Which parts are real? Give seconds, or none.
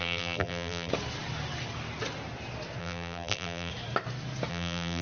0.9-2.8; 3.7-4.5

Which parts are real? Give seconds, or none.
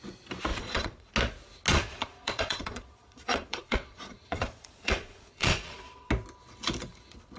0.0-0.5; 1.1-1.7; 6.1-7.4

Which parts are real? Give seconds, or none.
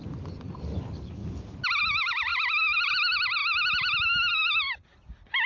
1.2-1.8; 3.4-4.3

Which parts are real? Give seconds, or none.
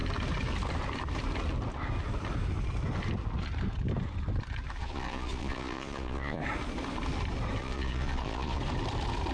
0.0-4.8; 6.4-7.6; 8.6-9.3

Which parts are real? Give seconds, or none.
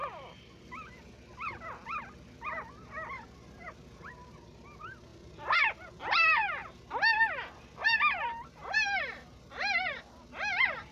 0.0-10.9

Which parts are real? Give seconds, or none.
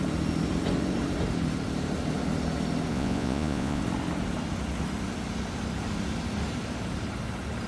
0.0-2.9; 3.8-7.7